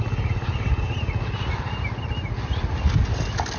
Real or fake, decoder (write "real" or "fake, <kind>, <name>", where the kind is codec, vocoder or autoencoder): real